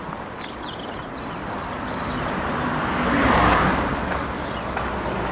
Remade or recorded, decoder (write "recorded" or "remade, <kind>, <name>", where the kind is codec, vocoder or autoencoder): recorded